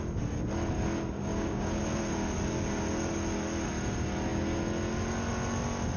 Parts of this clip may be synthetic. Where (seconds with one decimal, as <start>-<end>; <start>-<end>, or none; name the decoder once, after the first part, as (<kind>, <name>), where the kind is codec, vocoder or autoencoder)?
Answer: 1.3-1.8 (codec, DAC)